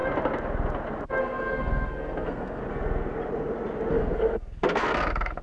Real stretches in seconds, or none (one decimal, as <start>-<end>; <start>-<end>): 0.0-1.2; 2.6-3.9